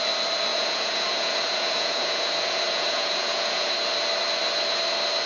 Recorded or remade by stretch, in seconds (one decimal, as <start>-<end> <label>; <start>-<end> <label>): 0.0-0.5 recorded; 0.5-3.7 remade; 3.7-5.3 recorded